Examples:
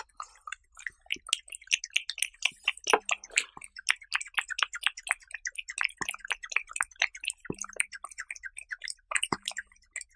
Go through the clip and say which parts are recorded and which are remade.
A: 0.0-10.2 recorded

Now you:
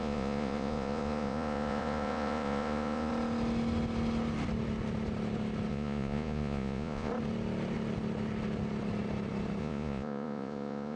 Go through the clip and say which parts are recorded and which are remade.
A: 0.0-3.1 remade; 3.1-5.7 recorded; 5.7-7.1 remade; 7.1-9.6 recorded; 9.6-11.0 remade

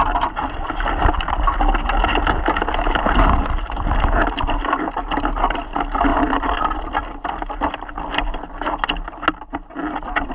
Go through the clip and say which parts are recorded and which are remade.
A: 0.0-10.3 recorded